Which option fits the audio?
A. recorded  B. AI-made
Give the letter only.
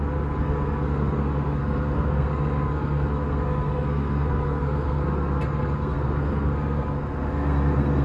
B